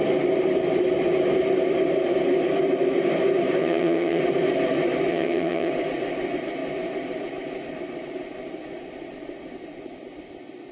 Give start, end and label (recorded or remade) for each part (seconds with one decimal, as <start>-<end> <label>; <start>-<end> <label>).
0.0-3.6 recorded; 3.6-4.2 remade; 4.2-5.1 recorded; 5.1-5.7 remade; 5.7-10.7 recorded